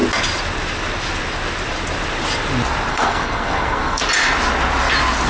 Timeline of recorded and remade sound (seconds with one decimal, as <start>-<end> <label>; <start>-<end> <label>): 0.0-2.9 recorded; 2.9-4.0 remade; 4.0-5.3 recorded